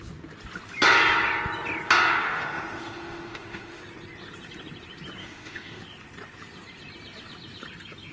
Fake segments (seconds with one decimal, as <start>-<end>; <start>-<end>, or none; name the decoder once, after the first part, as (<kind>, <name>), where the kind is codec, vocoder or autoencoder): 2.2-3.8 (autoencoder, DAC-VAE); 5.2-5.8